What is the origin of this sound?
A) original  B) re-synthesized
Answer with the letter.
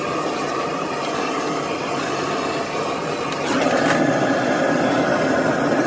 A